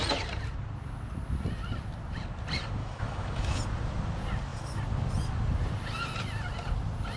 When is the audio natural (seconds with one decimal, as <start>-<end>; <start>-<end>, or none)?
0.0-2.8; 3.6-7.2